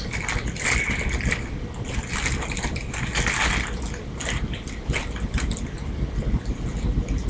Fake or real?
real